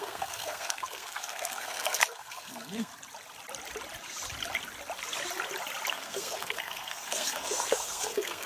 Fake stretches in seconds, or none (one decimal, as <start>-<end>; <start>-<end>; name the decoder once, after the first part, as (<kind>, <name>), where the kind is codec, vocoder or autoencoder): 0.0-2.9 (codec, SNAC); 5.9-8.5